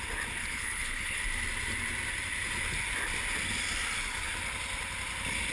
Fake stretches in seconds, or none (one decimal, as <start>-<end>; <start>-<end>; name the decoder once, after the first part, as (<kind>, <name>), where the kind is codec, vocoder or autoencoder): 0.4-1.2 (codec, HILCodec)